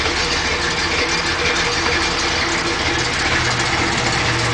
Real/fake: real